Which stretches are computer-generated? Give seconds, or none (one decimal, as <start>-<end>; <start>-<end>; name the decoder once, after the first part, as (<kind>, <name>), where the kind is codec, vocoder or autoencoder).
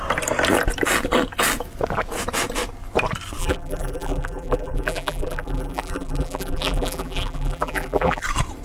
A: 3.4-8.2 (vocoder, BigVGAN v2)